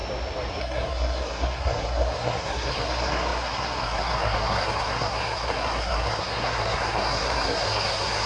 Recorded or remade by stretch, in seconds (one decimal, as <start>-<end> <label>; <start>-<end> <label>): 0.0-0.6 recorded; 0.6-8.3 remade